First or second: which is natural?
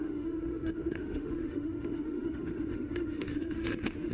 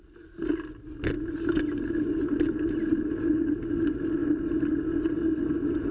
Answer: second